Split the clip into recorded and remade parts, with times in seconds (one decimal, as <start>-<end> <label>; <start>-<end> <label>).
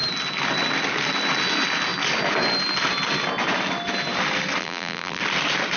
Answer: 0.0-4.6 recorded; 4.6-5.2 remade; 5.2-5.8 recorded